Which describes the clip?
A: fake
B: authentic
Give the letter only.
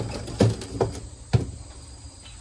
B